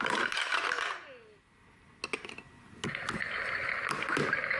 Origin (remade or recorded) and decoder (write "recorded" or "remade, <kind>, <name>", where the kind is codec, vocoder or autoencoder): recorded